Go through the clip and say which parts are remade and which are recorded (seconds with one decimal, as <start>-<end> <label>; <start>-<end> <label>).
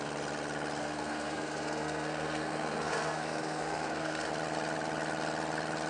0.0-0.8 recorded; 0.8-4.3 remade; 4.3-5.9 recorded